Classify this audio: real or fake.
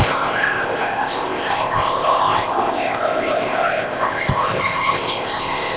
fake